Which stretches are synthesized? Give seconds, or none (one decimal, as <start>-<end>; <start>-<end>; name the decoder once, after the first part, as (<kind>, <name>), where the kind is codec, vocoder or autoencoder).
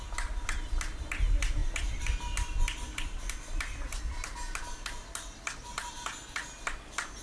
none